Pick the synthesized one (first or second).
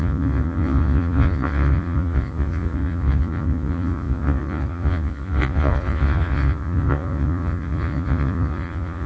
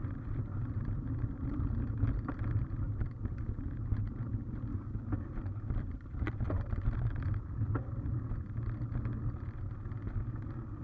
first